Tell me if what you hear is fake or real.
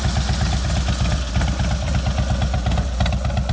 real